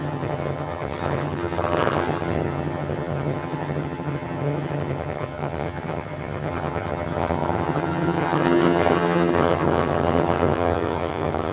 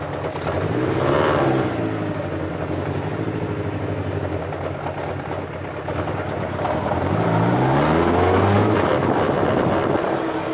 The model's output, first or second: first